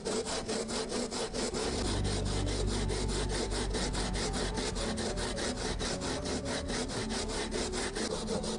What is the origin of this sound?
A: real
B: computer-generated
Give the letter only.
A